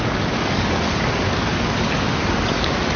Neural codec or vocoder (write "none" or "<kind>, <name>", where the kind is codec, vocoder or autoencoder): codec, DAC